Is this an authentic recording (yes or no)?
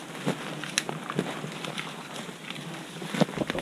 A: yes